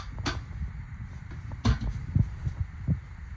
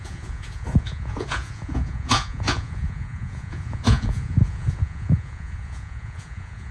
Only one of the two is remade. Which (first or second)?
second